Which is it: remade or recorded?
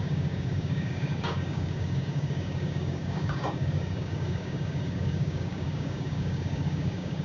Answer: remade